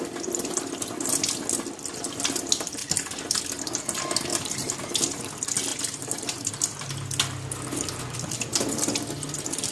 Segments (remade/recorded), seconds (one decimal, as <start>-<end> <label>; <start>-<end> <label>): 0.0-4.3 recorded; 4.3-5.2 remade; 5.2-5.7 recorded; 5.7-6.5 remade; 6.5-9.7 recorded